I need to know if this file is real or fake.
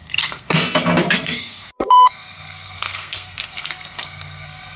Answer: fake